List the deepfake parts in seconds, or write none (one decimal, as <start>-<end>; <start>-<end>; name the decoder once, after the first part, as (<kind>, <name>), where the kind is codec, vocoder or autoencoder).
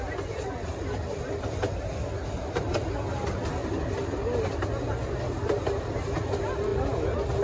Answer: none